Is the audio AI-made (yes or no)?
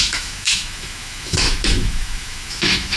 yes